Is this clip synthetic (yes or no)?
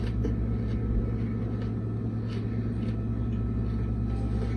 no